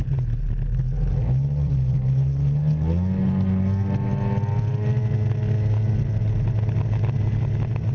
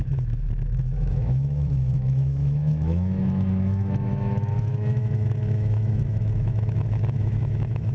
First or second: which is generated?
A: second